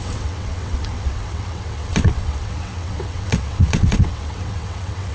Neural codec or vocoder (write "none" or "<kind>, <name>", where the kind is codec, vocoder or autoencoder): vocoder, WaveNeXt